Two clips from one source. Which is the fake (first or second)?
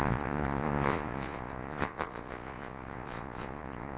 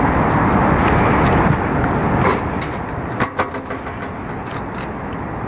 first